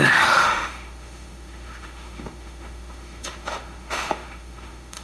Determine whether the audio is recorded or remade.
remade